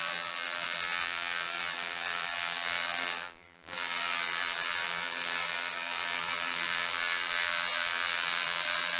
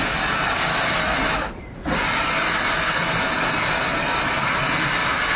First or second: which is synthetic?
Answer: first